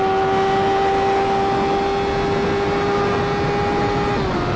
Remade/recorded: recorded